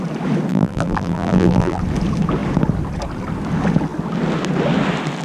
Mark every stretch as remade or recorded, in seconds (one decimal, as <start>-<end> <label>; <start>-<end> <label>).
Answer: 0.0-0.5 recorded; 0.5-1.8 remade; 1.8-5.2 recorded